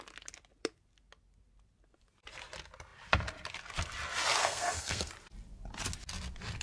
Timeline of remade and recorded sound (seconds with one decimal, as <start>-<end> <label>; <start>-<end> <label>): 0.0-4.4 recorded; 4.4-5.1 remade; 5.1-6.6 recorded